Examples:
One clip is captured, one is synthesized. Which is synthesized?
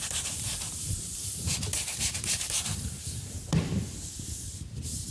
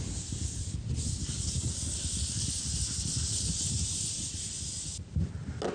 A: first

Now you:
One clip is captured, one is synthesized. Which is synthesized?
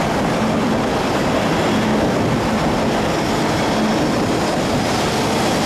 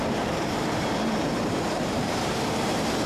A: second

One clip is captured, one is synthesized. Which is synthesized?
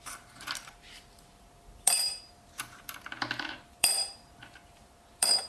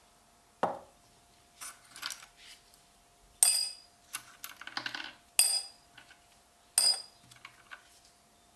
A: first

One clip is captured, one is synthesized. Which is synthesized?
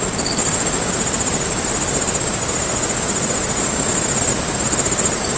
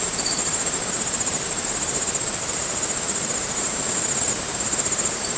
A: second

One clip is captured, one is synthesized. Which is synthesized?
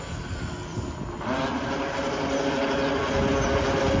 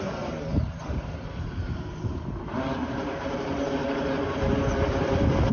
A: second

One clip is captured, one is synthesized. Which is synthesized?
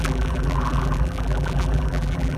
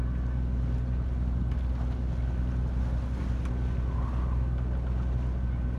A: first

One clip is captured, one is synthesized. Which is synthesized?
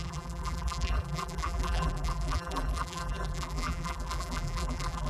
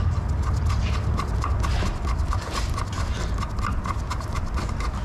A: first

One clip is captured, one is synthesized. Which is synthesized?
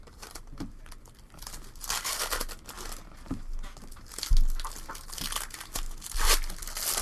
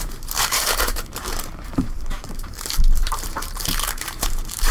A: second